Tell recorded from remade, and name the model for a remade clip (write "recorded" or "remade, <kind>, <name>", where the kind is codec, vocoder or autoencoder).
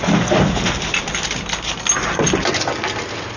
recorded